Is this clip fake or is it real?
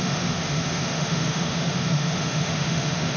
fake